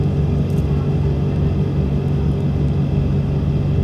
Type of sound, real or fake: real